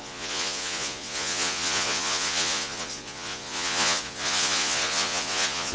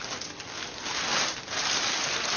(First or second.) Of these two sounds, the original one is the second